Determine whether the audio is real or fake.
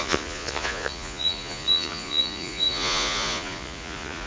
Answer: fake